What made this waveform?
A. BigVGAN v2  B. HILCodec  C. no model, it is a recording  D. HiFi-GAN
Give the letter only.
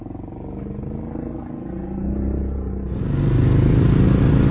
C